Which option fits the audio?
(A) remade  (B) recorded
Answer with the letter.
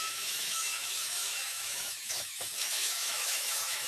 A